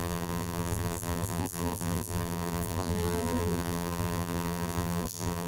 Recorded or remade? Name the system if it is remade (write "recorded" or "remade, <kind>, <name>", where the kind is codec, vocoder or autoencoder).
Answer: remade, vocoder, BigVGAN v2